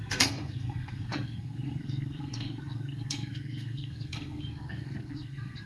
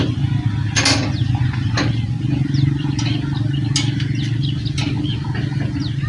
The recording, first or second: second